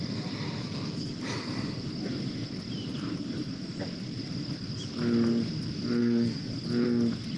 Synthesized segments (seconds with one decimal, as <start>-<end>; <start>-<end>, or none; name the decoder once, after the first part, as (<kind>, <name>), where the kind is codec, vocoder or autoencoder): 0.6-1.1 (codec, SNAC); 6.0-6.5